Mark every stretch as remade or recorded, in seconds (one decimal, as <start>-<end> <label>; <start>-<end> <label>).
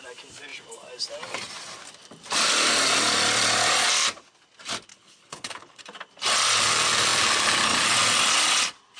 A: 0.0-4.9 recorded; 4.9-5.8 remade; 5.8-9.0 recorded